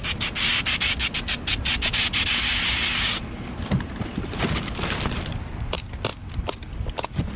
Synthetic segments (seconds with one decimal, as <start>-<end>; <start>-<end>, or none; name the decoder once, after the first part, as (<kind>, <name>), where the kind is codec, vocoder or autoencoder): none